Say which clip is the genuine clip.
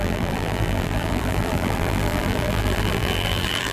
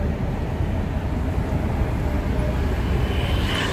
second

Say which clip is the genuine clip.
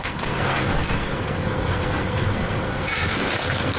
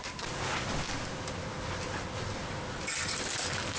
second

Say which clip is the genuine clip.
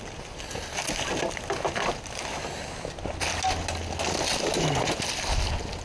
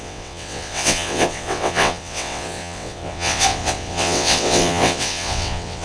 first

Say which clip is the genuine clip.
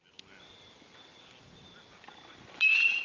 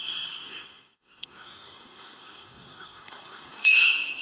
first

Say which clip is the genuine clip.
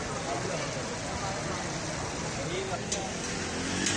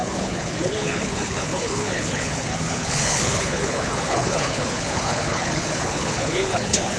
first